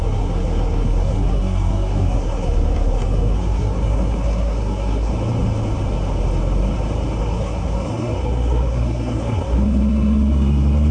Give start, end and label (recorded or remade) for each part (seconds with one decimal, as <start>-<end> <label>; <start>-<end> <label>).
0.0-5.1 remade; 5.1-7.2 recorded; 7.2-10.9 remade